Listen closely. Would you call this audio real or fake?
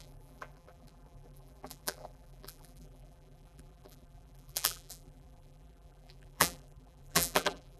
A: fake